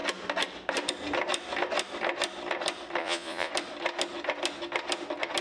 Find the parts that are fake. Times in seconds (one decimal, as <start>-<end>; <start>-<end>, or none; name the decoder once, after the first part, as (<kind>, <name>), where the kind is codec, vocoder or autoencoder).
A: 3.0-3.5 (vocoder, Vocos)